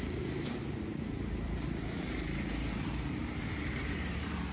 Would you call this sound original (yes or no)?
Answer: no